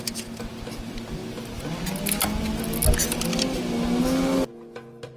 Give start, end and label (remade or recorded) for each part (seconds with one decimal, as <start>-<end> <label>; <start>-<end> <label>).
0.0-5.2 recorded